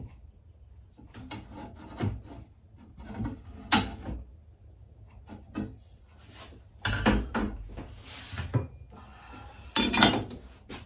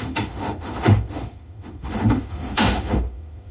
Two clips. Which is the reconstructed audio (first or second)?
second